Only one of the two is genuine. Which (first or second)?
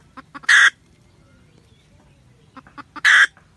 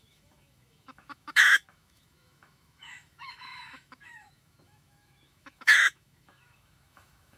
first